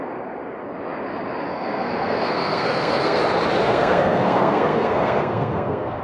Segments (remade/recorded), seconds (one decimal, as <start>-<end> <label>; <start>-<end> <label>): 0.0-1.5 recorded; 1.5-3.2 remade; 3.2-3.6 recorded; 3.6-6.0 remade